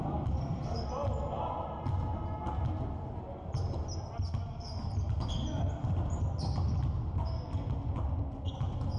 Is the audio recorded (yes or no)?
yes